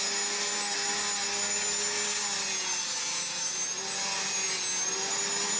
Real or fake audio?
real